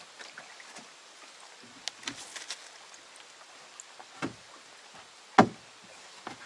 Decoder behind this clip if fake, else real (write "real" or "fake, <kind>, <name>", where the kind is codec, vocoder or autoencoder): real